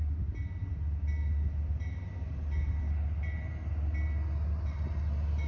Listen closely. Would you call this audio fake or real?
real